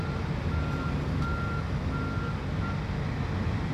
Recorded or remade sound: recorded